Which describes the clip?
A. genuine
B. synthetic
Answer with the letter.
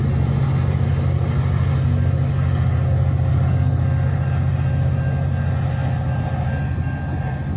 A